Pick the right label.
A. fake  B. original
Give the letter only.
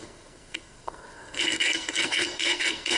A